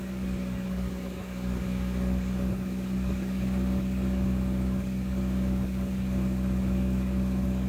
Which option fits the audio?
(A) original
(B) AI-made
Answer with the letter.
B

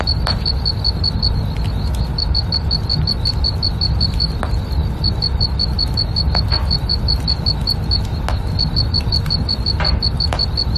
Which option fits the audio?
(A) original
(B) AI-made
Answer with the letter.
A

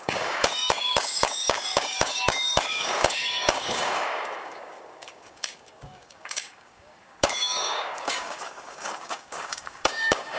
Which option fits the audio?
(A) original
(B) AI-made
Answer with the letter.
B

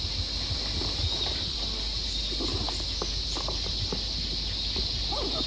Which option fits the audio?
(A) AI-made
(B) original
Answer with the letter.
B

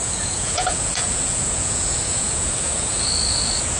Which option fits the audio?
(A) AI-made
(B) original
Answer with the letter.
A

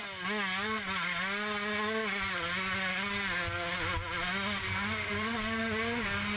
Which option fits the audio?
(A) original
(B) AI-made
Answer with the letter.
A